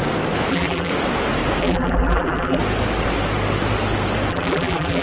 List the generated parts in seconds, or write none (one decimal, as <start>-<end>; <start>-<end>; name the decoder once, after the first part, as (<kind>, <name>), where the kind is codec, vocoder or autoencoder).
0.5-0.9 (vocoder, BigVGAN v2); 1.6-2.6; 4.3-5.0